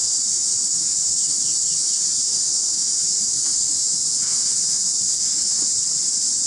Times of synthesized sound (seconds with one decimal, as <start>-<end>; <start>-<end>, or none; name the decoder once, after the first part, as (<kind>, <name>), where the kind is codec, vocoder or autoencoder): 0.0-5.7 (autoencoder, DAC-VAE)